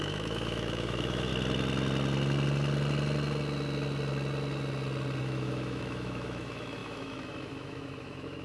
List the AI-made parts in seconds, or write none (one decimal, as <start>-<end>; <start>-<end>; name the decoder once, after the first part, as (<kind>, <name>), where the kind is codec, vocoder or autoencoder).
0.0-1.3 (autoencoder, DAC-VAE); 5.2-8.4